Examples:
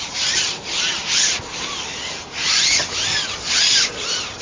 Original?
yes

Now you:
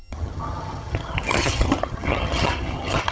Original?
no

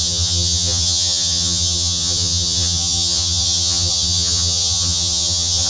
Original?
no